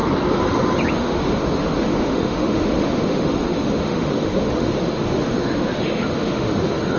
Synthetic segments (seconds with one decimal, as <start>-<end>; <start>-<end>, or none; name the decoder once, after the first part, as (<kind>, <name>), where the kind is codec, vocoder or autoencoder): 0.9-7.0 (autoencoder, DAC-VAE)